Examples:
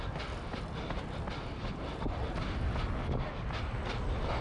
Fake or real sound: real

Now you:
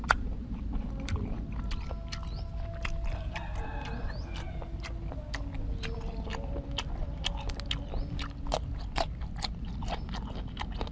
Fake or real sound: real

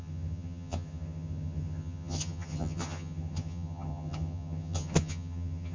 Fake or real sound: fake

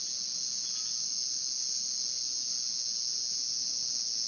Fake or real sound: real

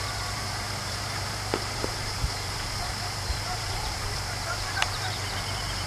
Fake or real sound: fake